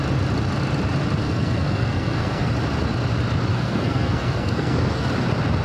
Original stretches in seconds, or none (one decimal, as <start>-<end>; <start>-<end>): 0.0-1.2; 2.5-3.5; 5.1-5.6